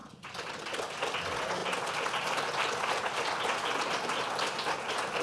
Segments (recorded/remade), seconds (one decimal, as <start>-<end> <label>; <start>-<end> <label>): 0.0-5.2 recorded